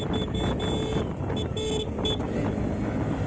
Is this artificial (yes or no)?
no